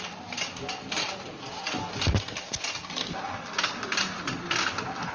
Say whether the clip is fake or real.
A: real